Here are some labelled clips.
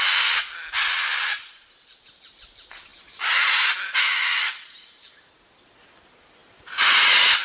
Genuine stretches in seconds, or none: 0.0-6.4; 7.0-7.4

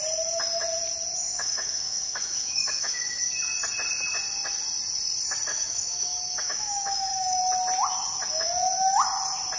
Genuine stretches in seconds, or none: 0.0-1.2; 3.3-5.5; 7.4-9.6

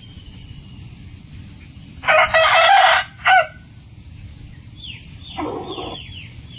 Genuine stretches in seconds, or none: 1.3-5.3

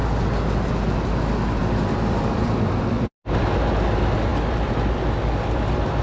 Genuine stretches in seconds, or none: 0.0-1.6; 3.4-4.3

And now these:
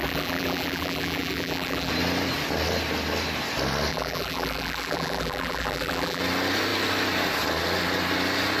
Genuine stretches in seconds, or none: 1.9-3.9; 6.2-8.6

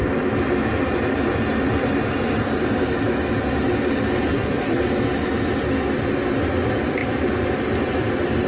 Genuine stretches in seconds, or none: 0.0-4.3; 4.8-8.5

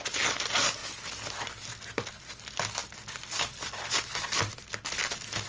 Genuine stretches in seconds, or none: 0.0-5.5

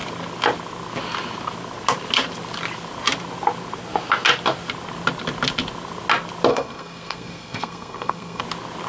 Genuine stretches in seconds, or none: 0.0-6.5; 8.4-8.9